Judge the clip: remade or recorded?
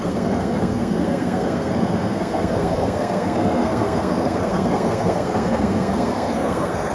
remade